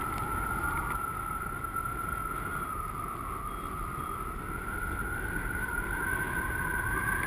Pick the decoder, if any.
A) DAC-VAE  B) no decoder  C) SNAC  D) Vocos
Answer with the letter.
B